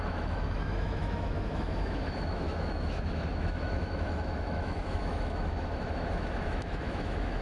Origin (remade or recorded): remade